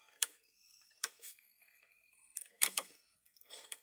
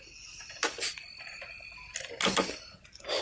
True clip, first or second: second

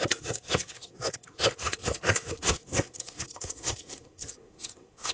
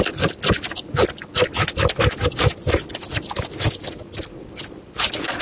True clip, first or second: second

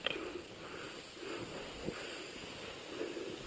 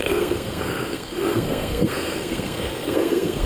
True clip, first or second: first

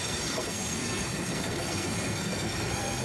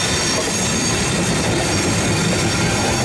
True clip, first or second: second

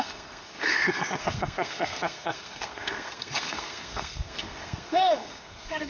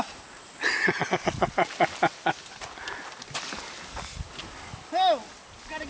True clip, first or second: second